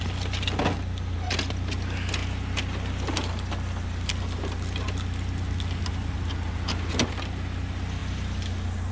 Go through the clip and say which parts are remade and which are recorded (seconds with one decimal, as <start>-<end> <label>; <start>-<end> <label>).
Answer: 0.0-8.9 recorded